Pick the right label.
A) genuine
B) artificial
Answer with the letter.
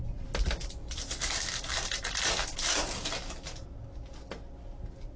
A